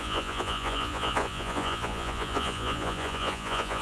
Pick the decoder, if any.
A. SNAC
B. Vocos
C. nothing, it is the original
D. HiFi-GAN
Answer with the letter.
B